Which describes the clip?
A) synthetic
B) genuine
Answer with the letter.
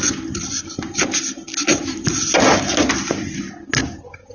B